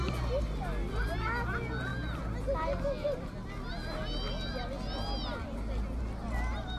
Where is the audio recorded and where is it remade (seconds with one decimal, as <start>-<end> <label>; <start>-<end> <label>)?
0.0-6.8 recorded